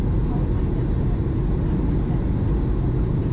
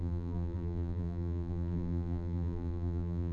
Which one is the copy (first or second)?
second